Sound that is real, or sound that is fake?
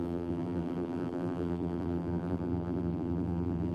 fake